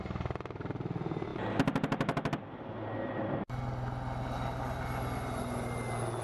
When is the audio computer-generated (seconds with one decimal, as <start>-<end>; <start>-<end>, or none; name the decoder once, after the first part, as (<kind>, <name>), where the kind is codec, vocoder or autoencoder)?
none